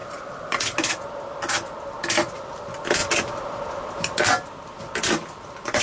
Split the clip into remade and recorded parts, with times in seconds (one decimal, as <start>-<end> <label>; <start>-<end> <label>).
0.0-5.8 recorded